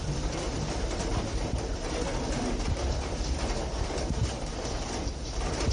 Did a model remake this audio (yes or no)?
no